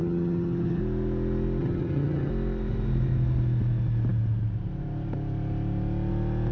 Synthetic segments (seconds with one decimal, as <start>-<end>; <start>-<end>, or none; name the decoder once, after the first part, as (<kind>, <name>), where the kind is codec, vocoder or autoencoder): 0.0-0.8 (vocoder, HiFi-GAN); 1.6-2.3